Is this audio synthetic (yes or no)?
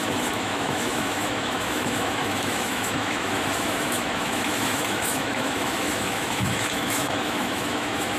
yes